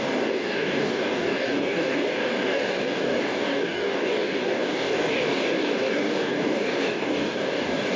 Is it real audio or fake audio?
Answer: fake